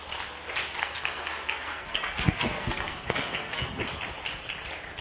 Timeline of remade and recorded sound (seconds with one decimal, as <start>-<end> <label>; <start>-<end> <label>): 0.0-0.8 recorded; 0.8-3.8 remade; 3.8-5.0 recorded